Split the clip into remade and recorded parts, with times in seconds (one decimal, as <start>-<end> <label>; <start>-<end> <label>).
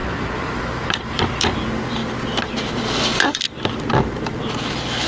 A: 0.0-1.2 remade; 1.2-5.1 recorded